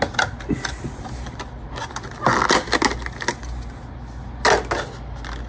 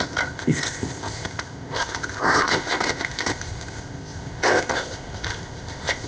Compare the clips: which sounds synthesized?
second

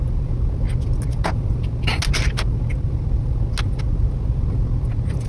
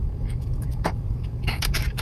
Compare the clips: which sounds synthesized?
second